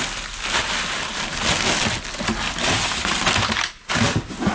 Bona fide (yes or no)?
yes